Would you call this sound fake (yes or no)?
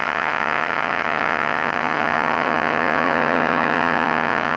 yes